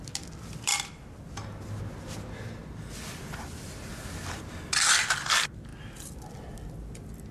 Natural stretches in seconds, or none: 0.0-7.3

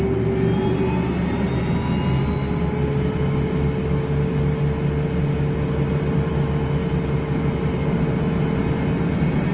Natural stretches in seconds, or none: 0.0-9.5

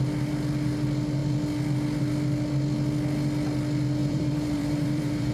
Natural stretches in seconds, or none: 0.0-4.0